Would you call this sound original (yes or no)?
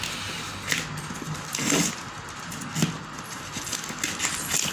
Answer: yes